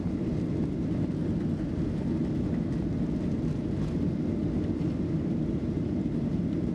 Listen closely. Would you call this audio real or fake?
real